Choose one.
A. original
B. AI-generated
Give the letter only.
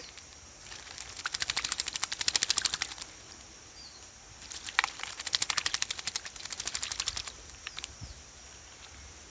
A